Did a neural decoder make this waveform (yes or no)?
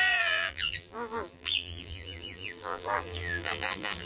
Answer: yes